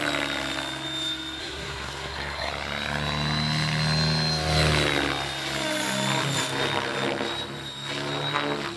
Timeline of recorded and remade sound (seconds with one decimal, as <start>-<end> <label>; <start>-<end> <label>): 0.0-1.4 recorded; 1.4-2.5 remade; 2.5-8.8 recorded